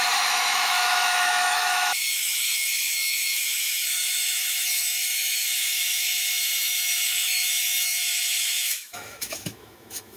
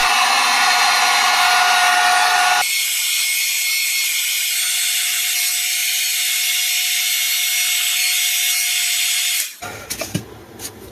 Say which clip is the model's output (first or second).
first